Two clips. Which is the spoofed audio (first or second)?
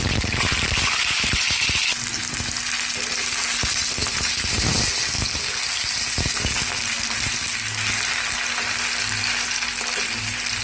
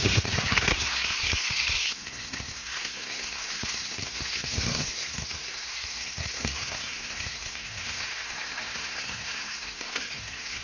second